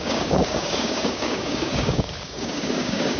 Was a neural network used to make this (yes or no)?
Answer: yes